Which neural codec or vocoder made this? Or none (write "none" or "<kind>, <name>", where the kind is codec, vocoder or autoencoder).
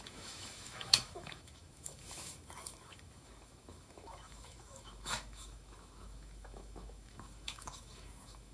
autoencoder, DAC-VAE